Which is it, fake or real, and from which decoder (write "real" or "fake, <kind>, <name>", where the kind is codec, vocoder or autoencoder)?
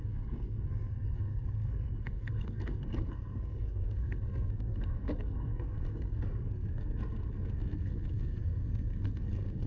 fake, codec, SNAC